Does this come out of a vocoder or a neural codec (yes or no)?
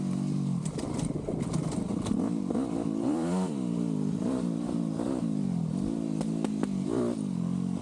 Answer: no